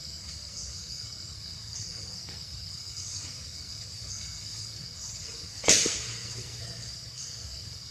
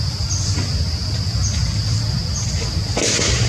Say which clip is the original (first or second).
second